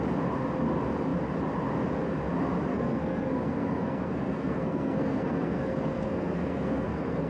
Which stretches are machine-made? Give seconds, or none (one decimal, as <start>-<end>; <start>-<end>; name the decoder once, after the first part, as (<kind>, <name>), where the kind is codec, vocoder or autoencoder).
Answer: 2.7-7.3 (codec, SNAC)